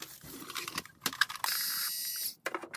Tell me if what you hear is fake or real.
real